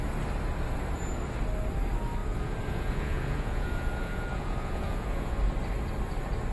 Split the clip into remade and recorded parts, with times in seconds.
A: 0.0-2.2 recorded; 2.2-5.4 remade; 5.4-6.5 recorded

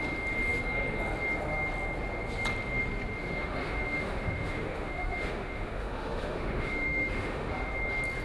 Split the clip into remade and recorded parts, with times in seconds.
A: 0.0-3.2 recorded; 3.2-7.5 remade; 7.5-8.2 recorded